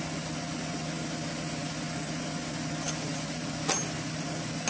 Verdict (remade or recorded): recorded